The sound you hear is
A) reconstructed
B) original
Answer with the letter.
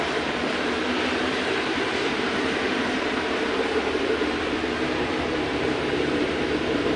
A